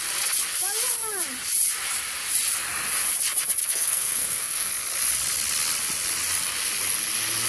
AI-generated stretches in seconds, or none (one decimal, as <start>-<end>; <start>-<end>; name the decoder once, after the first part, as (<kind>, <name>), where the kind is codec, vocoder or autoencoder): 3.6-4.7 (codec, SNAC)